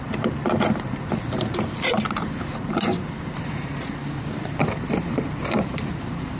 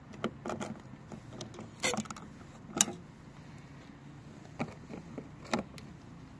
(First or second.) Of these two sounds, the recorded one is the second